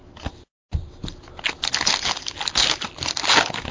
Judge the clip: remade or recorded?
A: recorded